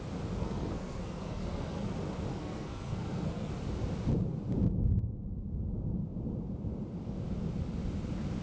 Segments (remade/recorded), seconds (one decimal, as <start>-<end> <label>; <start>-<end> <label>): 0.0-0.4 recorded; 0.4-1.9 remade; 1.9-2.3 recorded; 2.3-3.5 remade; 3.5-8.4 recorded